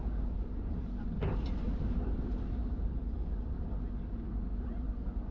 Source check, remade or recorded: remade